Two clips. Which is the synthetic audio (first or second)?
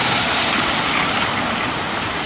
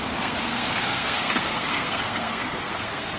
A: second